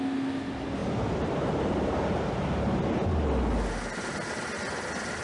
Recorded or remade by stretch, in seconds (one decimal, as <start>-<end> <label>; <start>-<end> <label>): 0.0-5.2 recorded